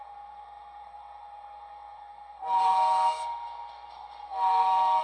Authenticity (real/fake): fake